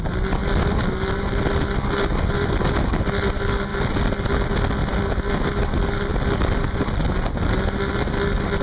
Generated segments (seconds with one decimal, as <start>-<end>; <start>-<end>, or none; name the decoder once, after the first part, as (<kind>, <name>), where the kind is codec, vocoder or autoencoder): none